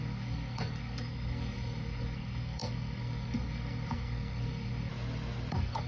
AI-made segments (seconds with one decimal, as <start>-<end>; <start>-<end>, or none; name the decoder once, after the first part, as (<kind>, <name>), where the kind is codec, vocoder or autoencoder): 0.0-4.9 (codec, SNAC); 5.5-5.9

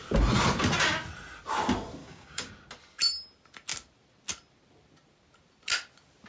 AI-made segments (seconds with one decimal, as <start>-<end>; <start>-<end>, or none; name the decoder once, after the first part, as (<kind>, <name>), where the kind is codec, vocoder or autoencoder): 2.0-2.5 (codec, DAC)

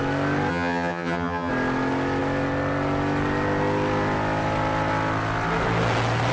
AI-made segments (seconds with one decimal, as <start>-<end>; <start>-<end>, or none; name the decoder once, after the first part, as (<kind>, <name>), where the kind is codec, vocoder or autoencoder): 0.5-1.5 (vocoder, HiFi-GAN)

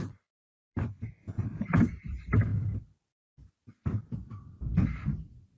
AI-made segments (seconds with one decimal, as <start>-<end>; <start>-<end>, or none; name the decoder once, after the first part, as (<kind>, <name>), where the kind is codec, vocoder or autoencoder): 0.0-2.5 (vocoder, BigVGAN v2)

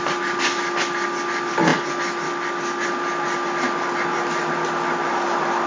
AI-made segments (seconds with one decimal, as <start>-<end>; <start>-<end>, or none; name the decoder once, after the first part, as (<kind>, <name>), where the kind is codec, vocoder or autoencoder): none

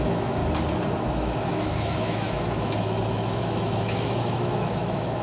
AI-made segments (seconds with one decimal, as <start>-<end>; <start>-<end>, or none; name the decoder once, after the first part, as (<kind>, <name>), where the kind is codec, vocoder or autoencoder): 0.0-0.4 (autoencoder, DAC-VAE); 1.1-5.2